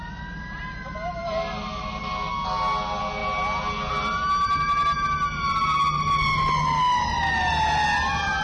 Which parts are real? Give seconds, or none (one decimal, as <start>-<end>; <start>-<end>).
0.0-8.4

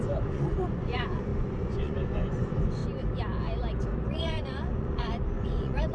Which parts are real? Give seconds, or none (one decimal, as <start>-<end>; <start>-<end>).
2.8-4.1

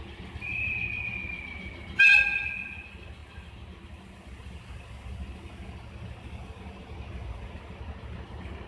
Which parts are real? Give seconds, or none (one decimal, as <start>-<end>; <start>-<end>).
0.0-8.7

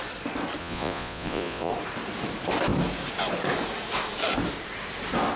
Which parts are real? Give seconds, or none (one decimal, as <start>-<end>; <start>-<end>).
0.0-0.6; 1.7-5.4

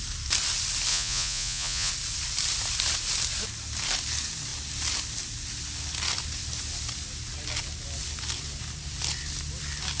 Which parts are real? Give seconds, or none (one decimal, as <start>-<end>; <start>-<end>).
0.0-0.9; 1.9-10.0

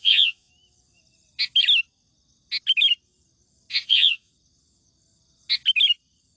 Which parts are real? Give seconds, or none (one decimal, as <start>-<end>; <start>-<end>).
0.5-3.7; 4.3-6.4